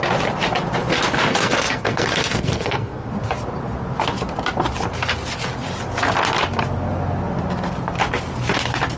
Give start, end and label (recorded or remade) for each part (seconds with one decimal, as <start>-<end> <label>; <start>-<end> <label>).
0.0-1.3 recorded; 1.3-3.1 remade; 3.1-9.0 recorded